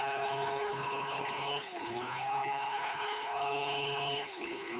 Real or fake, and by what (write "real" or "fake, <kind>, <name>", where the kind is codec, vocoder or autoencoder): fake, codec, HILCodec